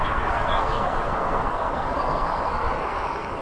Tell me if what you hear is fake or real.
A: fake